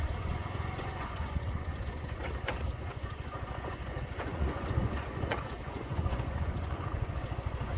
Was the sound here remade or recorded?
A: remade